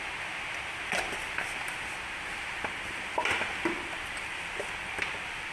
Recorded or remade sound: recorded